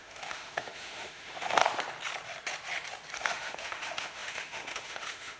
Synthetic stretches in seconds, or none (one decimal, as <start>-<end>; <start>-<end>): 0.0-1.6; 3.2-5.4